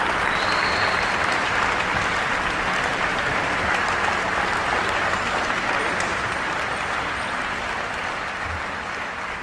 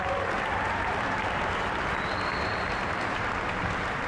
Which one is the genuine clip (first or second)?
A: second